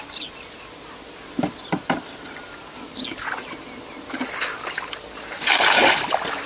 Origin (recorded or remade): recorded